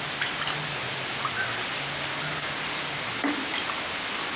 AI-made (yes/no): no